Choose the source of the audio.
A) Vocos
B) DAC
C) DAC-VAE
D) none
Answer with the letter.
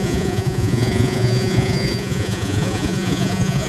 A